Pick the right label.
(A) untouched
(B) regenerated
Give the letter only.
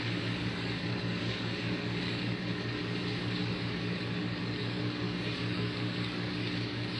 B